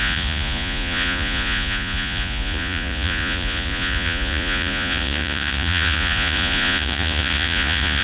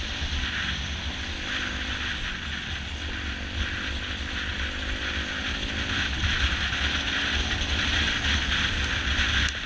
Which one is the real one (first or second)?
second